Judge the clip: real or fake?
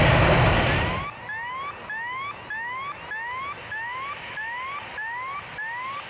real